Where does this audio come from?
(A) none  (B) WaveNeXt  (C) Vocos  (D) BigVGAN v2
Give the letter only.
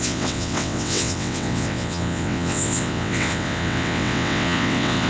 B